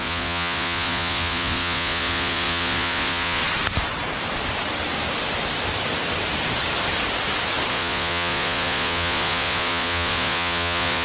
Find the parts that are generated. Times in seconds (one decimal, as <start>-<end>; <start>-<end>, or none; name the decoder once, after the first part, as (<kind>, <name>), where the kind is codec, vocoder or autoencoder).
0.0-3.4 (vocoder, Vocos); 7.7-11.0